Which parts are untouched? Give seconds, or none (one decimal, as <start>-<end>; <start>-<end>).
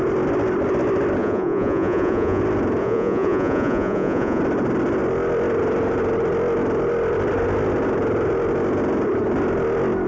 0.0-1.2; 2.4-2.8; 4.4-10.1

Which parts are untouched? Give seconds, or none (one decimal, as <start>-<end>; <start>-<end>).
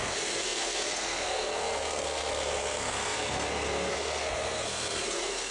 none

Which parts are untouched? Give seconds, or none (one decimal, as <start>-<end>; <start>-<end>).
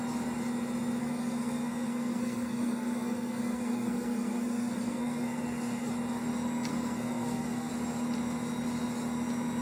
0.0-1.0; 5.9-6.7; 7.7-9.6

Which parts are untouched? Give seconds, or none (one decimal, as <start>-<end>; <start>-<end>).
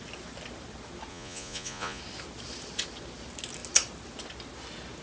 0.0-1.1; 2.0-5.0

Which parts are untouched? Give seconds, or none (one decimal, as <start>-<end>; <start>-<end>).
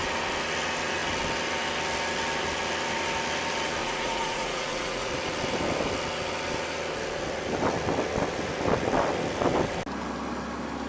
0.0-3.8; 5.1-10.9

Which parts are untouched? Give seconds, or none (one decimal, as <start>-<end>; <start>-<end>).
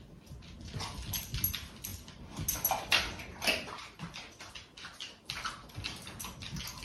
0.0-6.8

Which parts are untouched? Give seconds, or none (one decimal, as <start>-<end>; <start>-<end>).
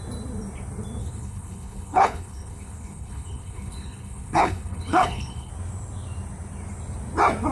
0.0-1.0; 5.5-7.5